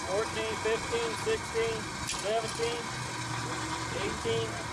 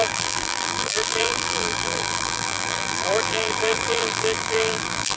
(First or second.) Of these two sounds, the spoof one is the second